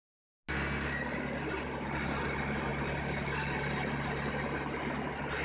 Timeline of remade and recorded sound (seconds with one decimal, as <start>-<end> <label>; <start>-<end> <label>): 0.0-2.7 recorded; 2.7-3.4 remade; 3.4-5.4 recorded